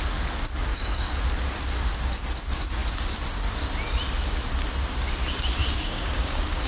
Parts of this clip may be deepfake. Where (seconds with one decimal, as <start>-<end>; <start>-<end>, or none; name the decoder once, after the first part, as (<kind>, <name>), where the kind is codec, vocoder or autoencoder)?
0.7-1.2 (codec, DAC); 5.6-6.7